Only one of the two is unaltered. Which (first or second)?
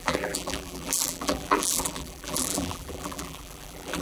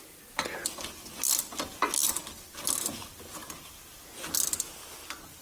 second